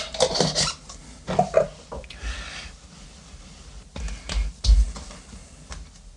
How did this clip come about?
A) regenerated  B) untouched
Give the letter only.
B